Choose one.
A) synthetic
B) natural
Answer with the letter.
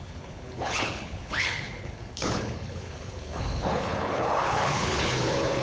A